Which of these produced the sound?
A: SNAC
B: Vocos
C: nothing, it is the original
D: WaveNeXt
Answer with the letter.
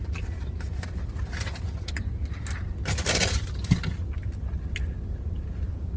C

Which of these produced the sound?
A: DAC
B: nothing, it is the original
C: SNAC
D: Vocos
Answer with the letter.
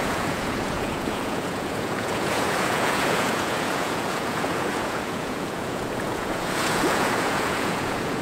D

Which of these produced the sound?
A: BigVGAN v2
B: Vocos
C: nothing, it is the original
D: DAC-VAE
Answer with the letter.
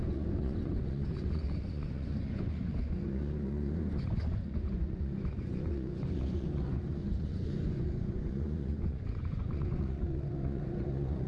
B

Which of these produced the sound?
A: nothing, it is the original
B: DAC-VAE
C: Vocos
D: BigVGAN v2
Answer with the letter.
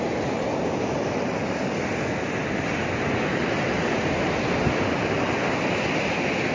A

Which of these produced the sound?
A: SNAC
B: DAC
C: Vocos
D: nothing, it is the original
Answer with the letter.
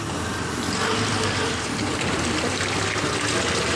D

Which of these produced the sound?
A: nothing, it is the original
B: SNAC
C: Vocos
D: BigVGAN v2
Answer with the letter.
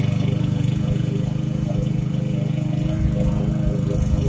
C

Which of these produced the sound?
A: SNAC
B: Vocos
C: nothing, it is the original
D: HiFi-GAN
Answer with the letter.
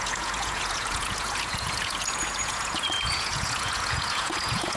B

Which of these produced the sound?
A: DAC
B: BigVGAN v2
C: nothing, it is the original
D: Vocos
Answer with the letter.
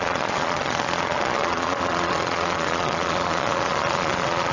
D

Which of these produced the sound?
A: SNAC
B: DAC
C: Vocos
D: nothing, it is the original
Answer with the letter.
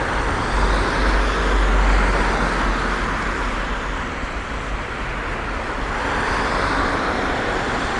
D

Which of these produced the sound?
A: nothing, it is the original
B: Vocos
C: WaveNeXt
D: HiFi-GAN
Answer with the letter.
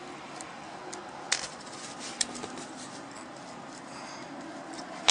A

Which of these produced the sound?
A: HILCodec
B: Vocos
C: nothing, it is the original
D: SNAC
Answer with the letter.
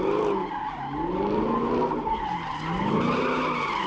C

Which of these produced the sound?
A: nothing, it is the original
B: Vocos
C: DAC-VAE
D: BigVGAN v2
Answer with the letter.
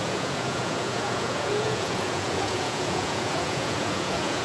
B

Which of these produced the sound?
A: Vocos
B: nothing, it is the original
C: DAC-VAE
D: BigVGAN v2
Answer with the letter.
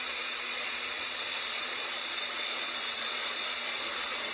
A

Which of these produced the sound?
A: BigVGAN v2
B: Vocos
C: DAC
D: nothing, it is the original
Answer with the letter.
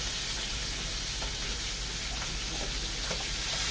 D